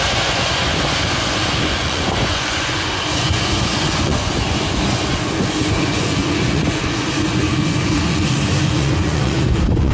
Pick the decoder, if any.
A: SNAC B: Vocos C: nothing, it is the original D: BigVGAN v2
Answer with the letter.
B